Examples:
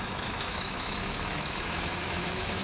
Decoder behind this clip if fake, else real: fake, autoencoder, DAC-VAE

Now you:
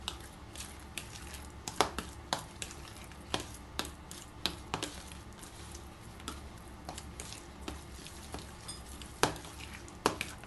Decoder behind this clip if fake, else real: real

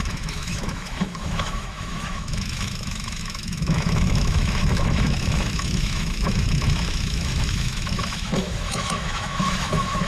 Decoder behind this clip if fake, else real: fake, autoencoder, DAC-VAE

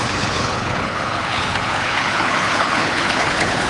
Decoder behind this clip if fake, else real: fake, codec, HILCodec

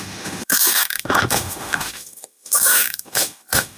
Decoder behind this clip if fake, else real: fake, autoencoder, DAC-VAE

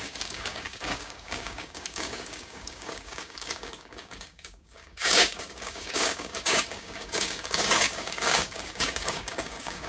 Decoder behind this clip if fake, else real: fake, codec, DAC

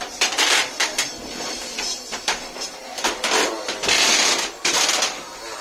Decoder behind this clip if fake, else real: fake, vocoder, BigVGAN v2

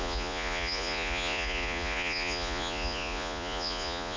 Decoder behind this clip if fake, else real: fake, vocoder, Vocos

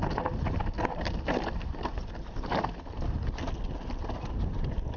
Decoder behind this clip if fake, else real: fake, vocoder, BigVGAN v2